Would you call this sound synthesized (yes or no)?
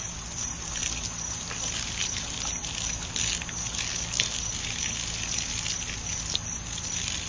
no